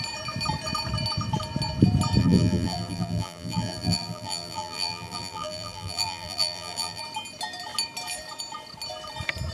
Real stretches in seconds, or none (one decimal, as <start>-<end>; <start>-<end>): 0.0-2.2; 7.0-9.5